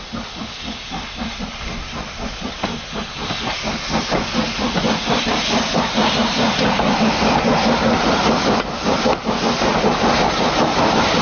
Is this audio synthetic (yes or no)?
no